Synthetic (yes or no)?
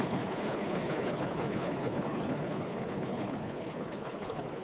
yes